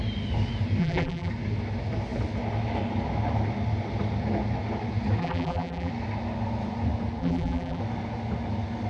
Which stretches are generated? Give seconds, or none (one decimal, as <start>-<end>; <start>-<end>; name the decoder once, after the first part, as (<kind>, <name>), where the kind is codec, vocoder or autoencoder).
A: 0.8-1.3 (vocoder, BigVGAN v2); 5.2-5.9; 7.2-7.8